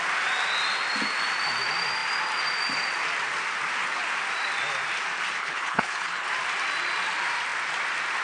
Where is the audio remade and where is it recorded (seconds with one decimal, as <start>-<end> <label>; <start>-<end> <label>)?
0.0-5.4 recorded; 5.4-6.3 remade; 6.3-8.2 recorded